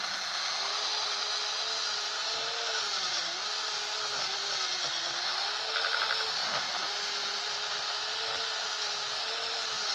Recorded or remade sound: recorded